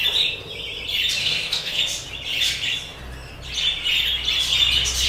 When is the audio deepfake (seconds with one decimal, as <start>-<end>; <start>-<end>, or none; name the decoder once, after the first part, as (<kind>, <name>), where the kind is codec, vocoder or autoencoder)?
1.2-1.8 (codec, SNAC)